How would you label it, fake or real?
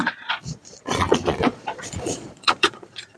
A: fake